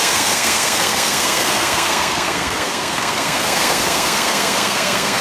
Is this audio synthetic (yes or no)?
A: yes